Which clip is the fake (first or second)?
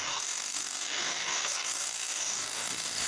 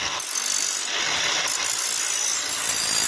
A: first